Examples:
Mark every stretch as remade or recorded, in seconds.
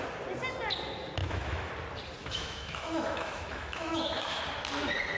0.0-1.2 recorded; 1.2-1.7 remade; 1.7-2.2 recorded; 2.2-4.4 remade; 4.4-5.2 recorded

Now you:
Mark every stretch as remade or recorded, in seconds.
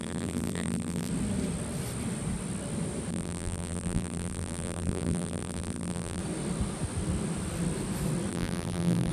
0.0-1.1 remade; 1.1-3.1 recorded; 3.1-6.2 remade; 6.2-8.3 recorded; 8.3-9.1 remade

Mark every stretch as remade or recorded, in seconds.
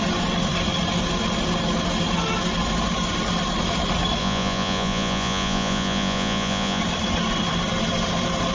0.0-4.2 recorded; 4.2-6.8 remade; 6.8-8.5 recorded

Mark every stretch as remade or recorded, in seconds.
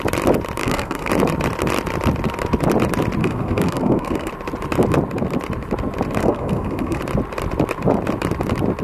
0.0-0.6 recorded; 0.6-1.1 remade; 1.1-3.2 recorded; 3.2-4.3 remade; 4.3-6.2 recorded; 6.2-7.0 remade; 7.0-8.8 recorded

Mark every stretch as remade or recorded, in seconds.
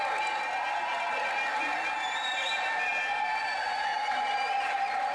0.0-5.1 recorded